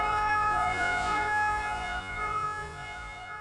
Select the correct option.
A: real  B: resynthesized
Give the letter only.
B